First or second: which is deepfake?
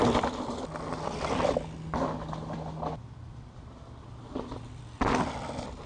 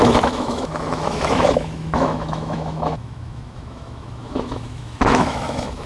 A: second